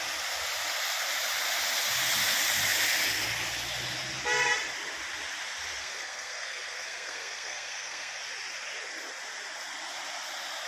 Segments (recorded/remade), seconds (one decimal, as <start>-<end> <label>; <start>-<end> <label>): 0.0-5.8 recorded; 5.8-8.2 remade; 8.2-10.7 recorded